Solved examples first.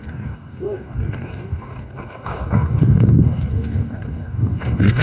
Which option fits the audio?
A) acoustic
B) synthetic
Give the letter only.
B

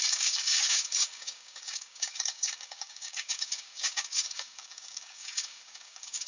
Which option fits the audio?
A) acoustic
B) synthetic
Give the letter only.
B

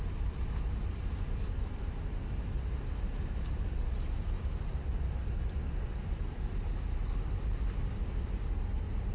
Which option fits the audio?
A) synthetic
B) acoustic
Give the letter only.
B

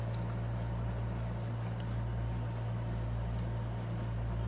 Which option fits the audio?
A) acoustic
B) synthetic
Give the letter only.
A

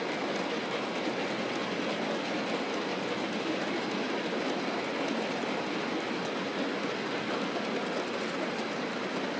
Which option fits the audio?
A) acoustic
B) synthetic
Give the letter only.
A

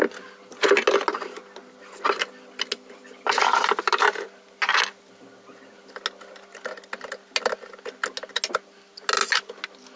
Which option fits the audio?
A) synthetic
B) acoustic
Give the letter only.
B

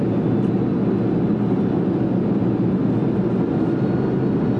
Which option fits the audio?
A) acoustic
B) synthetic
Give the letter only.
A